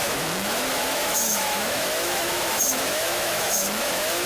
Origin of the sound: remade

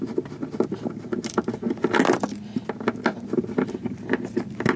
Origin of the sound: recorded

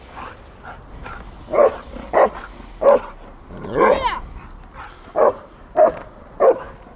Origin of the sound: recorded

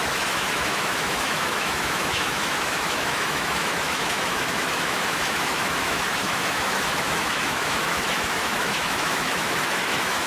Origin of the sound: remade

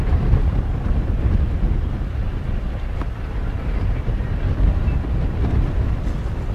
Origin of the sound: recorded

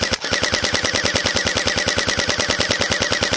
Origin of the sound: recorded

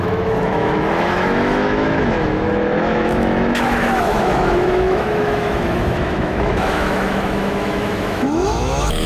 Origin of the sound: remade